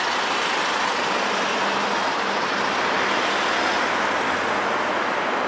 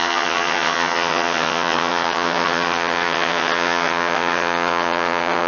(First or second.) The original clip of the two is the first